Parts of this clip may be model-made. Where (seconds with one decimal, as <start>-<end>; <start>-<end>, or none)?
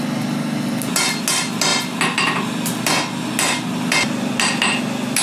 none